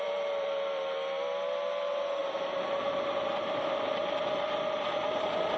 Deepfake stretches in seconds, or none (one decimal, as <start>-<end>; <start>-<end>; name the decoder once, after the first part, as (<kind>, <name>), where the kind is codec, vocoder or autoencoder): 0.0-2.2 (vocoder, BigVGAN v2); 3.3-5.6